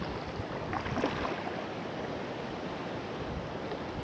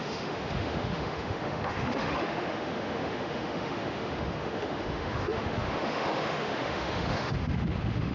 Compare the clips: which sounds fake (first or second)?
second